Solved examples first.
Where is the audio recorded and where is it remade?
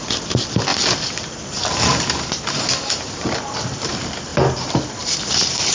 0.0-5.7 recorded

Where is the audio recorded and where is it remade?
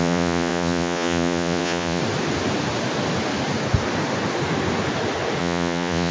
0.0-2.0 remade; 2.0-5.4 recorded; 5.4-6.1 remade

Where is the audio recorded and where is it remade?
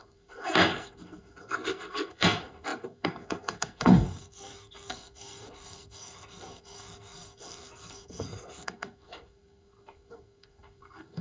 0.0-11.2 remade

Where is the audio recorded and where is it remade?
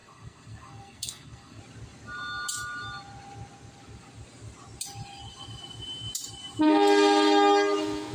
0.0-1.6 remade; 1.6-8.1 recorded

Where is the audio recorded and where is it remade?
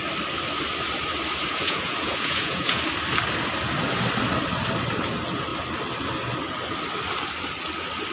0.0-1.4 recorded; 1.4-2.8 remade; 2.8-8.1 recorded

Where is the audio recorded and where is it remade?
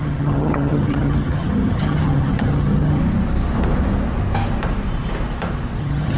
0.0-3.0 remade; 3.0-5.8 recorded; 5.8-6.2 remade